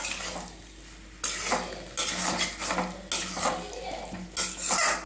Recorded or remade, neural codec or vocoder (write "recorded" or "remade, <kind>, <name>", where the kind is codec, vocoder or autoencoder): recorded